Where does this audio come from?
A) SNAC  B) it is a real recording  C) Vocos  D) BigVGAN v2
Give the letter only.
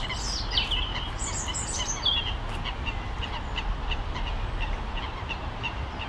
B